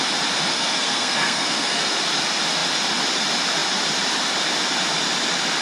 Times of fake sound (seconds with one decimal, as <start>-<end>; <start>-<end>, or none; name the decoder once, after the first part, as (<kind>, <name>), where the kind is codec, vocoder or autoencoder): 0.5-1.8 (codec, SNAC)